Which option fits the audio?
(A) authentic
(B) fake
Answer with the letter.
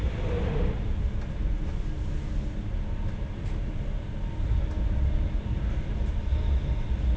A